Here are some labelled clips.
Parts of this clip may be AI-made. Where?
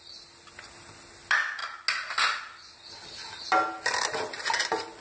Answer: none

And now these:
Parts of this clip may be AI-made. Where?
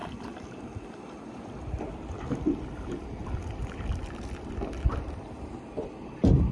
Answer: 3.2-5.6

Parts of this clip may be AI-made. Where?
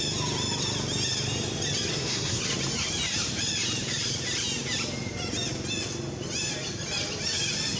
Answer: 1.9-2.4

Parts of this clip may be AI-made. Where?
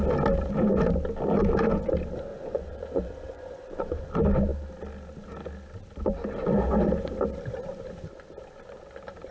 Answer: 2.3-4.1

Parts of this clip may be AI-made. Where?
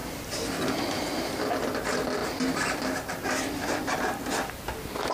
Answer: 0.0-0.6; 2.2-4.5